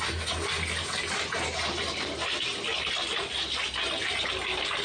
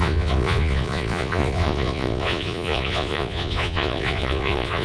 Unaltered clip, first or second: first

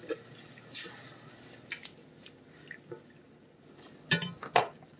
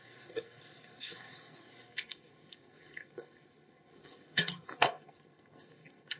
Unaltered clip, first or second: first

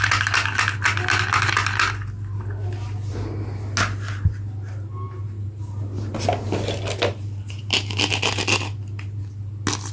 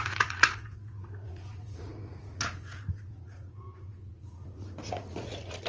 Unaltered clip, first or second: first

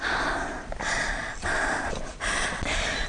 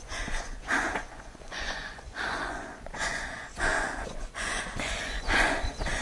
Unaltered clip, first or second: first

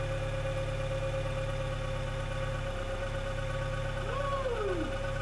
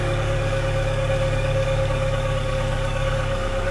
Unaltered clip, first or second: first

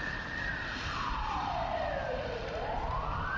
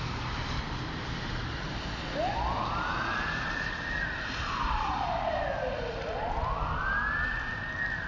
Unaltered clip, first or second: second